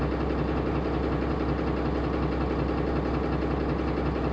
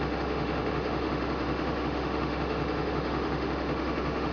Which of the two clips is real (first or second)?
first